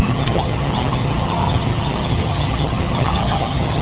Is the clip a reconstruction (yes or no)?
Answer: yes